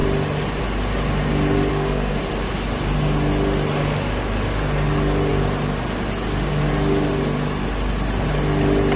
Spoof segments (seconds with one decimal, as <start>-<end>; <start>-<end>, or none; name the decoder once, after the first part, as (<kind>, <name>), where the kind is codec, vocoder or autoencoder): 1.7-2.2 (codec, SNAC)